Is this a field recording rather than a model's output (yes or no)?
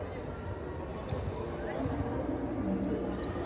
yes